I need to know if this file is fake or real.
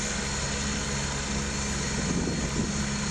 real